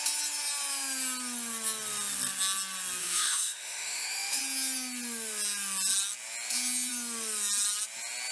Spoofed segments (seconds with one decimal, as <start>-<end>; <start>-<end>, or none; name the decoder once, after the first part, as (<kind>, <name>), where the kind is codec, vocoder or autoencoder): 3.0-4.4 (autoencoder, DAC-VAE)